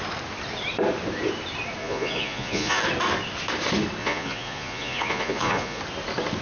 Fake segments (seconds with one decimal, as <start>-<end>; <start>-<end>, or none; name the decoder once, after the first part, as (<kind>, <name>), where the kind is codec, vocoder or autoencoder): 1.8-2.8 (vocoder, Vocos); 4.0-5.8